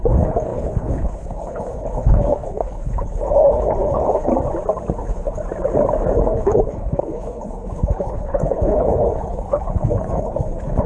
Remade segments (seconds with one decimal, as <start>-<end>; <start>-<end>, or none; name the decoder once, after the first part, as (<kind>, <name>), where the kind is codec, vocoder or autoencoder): 0.0-4.3 (codec, HILCodec); 4.9-5.4; 6.2-10.9